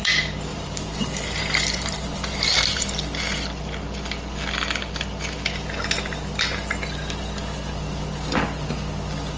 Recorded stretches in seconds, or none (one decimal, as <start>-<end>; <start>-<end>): 0.0-0.5; 2.9-9.4